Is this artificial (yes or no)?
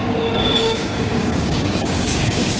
yes